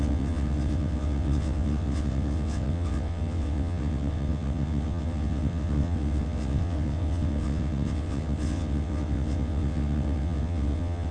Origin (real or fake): fake